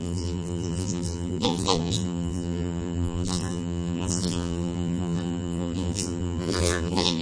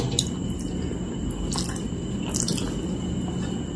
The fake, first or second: first